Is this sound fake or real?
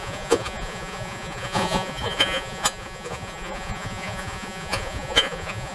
fake